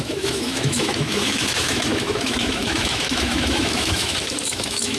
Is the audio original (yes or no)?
no